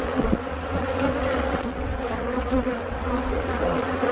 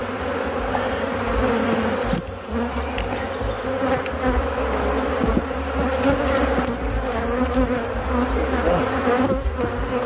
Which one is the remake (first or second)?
first